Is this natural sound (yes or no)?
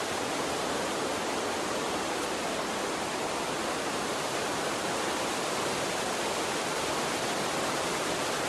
yes